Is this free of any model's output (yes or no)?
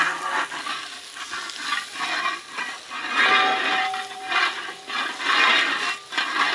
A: yes